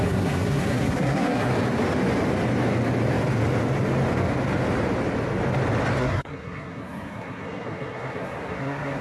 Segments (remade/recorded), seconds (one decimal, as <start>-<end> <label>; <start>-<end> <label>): 0.0-1.5 remade; 1.5-6.0 recorded; 6.0-9.0 remade